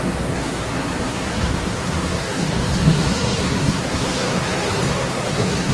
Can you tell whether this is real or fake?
fake